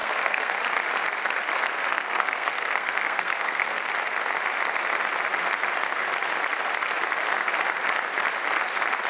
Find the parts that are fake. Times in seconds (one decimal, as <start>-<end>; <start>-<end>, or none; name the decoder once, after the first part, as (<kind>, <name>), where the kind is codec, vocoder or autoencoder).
0.0-0.6 (codec, SNAC); 1.9-3.9